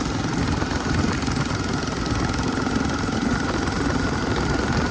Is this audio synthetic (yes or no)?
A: no